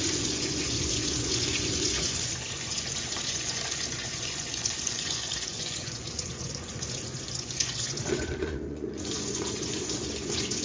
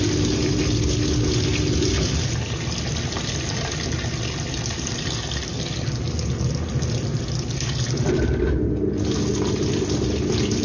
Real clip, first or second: second